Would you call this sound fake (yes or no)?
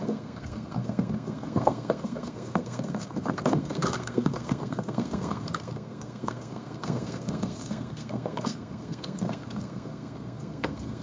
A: yes